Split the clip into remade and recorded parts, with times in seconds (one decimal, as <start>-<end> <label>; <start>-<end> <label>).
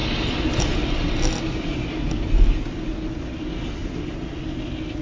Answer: 0.0-3.8 recorded; 3.8-4.4 remade; 4.4-5.0 recorded